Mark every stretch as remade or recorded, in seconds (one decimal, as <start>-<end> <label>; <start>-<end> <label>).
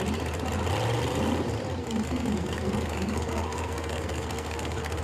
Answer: 0.0-1.8 recorded; 1.8-5.0 remade